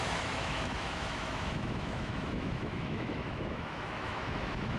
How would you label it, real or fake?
fake